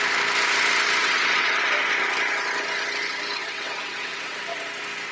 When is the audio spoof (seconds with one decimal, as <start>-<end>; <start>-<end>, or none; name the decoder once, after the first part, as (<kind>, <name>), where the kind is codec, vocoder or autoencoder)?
1.0-1.6 (vocoder, WaveNeXt); 3.4-4.4